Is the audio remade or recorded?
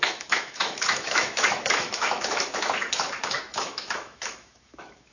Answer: remade